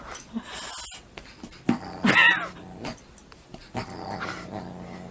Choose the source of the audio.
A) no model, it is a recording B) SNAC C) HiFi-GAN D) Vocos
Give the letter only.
A